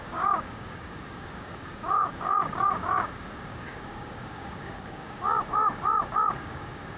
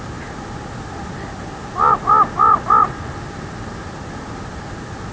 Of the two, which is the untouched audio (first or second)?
second